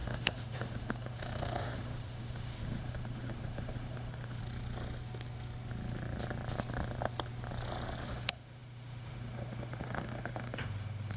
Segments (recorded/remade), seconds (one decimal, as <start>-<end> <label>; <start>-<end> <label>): 0.0-4.4 remade; 4.4-8.1 recorded; 8.1-11.2 remade